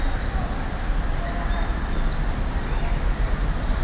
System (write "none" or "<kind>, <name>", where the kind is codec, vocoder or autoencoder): none